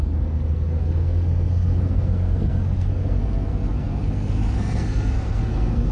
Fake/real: fake